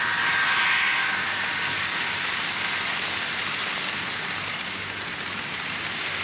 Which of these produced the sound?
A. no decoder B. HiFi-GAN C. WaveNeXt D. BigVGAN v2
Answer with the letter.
A